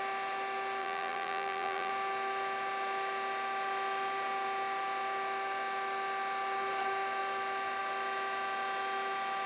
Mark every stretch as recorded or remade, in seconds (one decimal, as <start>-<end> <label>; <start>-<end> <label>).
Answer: 0.0-0.8 recorded; 0.8-1.9 remade; 1.9-9.5 recorded